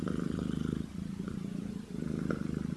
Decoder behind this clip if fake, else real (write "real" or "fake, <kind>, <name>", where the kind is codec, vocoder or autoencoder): real